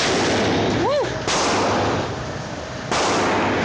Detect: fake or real real